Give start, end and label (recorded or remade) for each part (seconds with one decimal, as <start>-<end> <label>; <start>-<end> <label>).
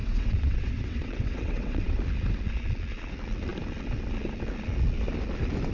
0.0-2.0 remade; 2.0-5.7 recorded